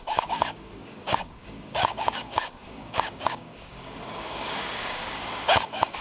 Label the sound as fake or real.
fake